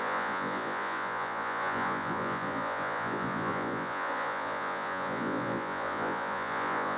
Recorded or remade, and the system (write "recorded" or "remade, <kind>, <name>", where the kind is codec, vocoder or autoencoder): remade, vocoder, Vocos